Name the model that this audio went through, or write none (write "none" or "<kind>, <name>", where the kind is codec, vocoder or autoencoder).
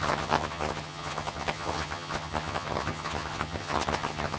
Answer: vocoder, HiFi-GAN